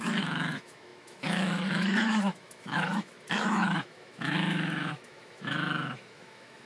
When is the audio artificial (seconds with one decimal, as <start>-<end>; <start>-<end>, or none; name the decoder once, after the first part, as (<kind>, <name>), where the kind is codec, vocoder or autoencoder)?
0.0-6.7 (autoencoder, DAC-VAE)